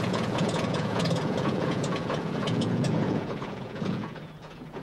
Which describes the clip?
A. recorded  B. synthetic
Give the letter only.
B